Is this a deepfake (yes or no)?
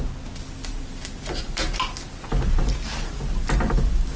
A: no